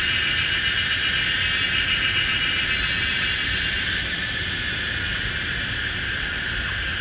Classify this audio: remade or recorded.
recorded